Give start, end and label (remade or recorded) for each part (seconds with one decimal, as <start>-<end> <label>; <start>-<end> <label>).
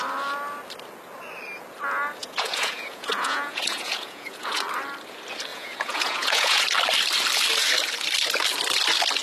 0.0-2.2 recorded; 2.2-4.6 remade; 4.6-5.5 recorded; 5.5-6.6 remade; 6.6-9.2 recorded